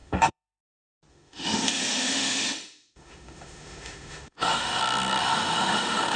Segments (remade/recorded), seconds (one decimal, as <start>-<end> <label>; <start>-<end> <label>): 0.0-0.6 remade; 0.6-1.1 recorded; 1.1-4.8 remade; 4.8-5.2 recorded; 5.2-6.2 remade